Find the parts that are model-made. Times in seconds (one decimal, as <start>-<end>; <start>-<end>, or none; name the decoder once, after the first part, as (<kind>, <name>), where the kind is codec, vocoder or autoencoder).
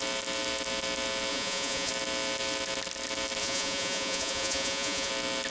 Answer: 1.3-1.9 (vocoder, Vocos); 3.4-5.1